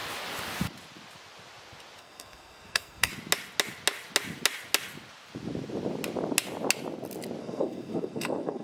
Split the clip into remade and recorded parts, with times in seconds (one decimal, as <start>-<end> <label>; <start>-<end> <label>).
0.0-2.0 recorded; 2.0-3.1 remade; 3.1-7.4 recorded; 7.4-8.6 remade